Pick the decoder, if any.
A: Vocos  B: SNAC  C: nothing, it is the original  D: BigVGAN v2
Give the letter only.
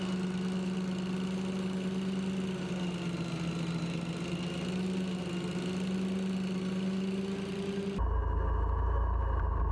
C